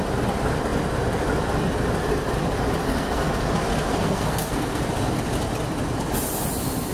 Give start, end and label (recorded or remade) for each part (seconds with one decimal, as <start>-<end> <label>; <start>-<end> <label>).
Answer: 0.0-2.8 recorded; 2.8-3.5 remade; 3.5-3.9 recorded; 3.9-4.8 remade; 4.8-6.9 recorded